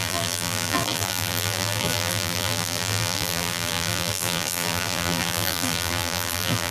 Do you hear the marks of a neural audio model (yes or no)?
yes